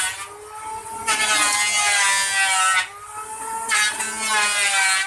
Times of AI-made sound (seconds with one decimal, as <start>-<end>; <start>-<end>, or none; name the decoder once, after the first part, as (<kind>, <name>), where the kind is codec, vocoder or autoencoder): none

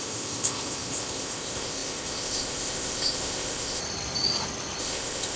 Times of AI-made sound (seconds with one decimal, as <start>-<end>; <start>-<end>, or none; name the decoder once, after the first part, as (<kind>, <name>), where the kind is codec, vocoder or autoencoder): 0.0-3.8 (codec, ZipCodec); 4.8-5.4

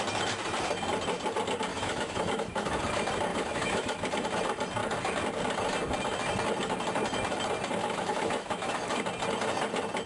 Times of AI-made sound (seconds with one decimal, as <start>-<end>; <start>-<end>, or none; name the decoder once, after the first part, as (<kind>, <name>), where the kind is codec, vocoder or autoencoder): 1.7-2.8 (autoencoder, DAC-VAE); 3.3-4.0; 7.8-9.0

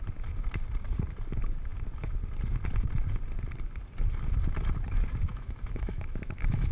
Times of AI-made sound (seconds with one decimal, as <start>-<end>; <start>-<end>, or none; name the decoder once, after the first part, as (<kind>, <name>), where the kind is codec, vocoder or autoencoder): 5.3-6.7 (autoencoder, DAC-VAE)

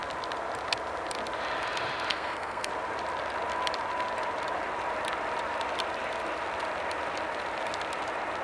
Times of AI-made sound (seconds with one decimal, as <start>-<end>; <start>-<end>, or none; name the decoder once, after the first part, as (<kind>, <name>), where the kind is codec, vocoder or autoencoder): 2.1-2.7 (codec, SNAC)

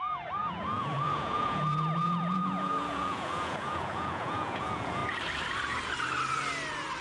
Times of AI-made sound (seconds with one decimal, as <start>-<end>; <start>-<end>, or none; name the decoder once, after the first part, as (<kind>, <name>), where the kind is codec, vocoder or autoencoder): 0.0-5.0 (vocoder, Vocos)